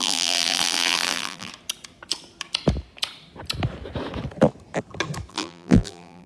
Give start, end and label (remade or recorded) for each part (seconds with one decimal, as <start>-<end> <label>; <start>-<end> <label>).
0.0-1.5 remade; 1.5-5.3 recorded; 5.3-6.3 remade